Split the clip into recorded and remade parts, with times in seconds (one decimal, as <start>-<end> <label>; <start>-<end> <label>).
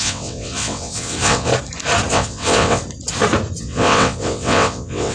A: 0.0-1.5 remade; 1.5-2.1 recorded; 2.1-2.8 remade; 2.8-3.6 recorded; 3.6-5.1 remade